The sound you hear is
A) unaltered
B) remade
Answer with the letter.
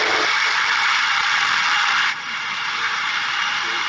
B